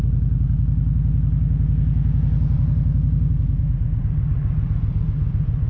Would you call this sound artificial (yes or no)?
no